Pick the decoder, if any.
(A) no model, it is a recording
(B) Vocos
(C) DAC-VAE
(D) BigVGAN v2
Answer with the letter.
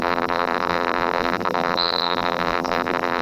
D